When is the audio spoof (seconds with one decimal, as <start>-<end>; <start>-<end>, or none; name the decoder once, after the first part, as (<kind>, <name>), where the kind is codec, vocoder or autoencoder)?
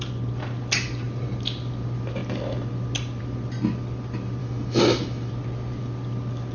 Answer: 4.4-5.3 (autoencoder, DAC-VAE)